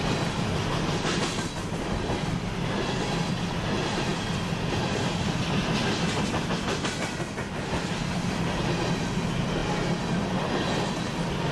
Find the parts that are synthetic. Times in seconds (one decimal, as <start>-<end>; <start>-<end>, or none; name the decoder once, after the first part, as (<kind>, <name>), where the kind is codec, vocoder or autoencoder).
none